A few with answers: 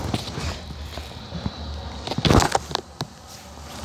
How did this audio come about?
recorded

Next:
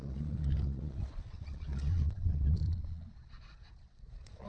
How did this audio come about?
remade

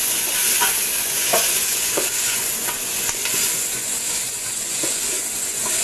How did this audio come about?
remade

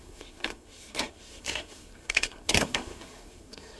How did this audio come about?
remade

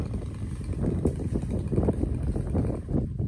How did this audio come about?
recorded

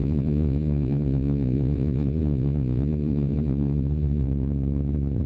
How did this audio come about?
remade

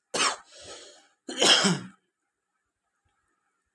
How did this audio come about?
recorded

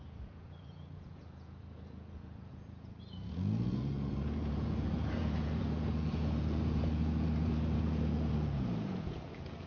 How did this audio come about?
remade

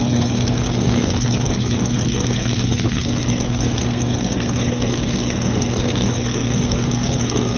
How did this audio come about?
remade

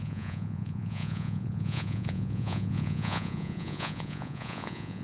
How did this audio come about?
remade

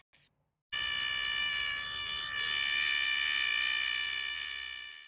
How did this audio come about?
recorded